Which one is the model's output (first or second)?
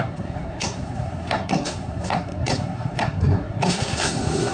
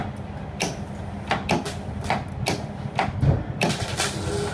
first